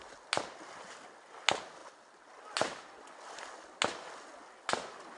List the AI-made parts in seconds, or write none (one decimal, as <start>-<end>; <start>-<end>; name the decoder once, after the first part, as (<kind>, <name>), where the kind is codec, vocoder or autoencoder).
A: none